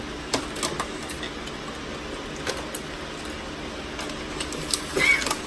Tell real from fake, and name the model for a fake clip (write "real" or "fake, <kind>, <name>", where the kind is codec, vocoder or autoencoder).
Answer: real